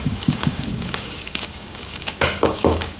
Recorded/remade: remade